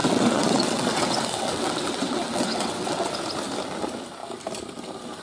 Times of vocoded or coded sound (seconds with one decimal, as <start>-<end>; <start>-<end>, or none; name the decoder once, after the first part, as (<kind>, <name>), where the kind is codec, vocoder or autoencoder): 0.0-3.1 (vocoder, WaveNeXt)